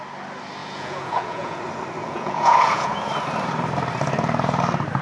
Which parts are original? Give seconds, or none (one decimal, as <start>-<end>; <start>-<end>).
0.0-0.6; 1.6-2.0; 3.1-5.0